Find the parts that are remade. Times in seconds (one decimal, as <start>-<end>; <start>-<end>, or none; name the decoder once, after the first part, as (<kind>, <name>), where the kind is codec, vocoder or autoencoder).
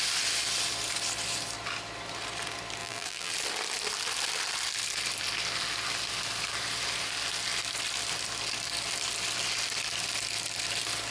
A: 2.8-3.3 (vocoder, BigVGAN v2)